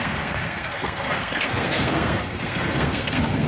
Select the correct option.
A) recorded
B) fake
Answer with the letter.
B